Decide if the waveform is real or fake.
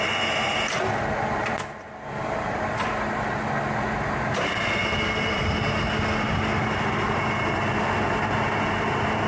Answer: fake